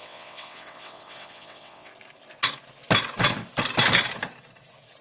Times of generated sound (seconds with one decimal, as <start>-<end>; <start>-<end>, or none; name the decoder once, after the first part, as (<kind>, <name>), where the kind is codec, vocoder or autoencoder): 0.0-1.9 (vocoder, WaveNeXt)